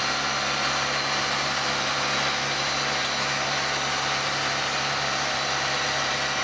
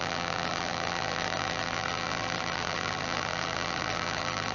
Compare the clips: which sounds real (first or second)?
first